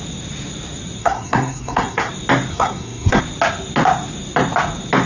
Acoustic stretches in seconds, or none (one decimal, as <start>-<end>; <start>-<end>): 0.0-1.0; 2.1-2.5; 3.2-5.1